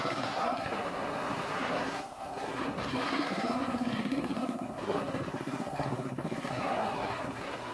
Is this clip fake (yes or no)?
yes